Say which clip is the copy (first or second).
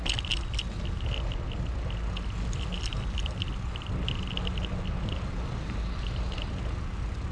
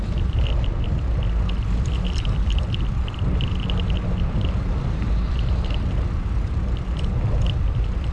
second